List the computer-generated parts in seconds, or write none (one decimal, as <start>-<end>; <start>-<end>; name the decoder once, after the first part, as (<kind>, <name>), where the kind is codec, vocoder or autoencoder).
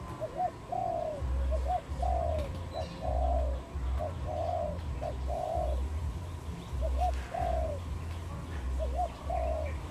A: none